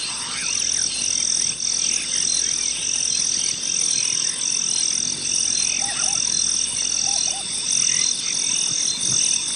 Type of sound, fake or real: real